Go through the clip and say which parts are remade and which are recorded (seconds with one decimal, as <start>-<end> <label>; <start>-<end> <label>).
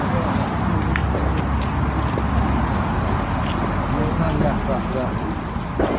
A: 0.0-6.0 recorded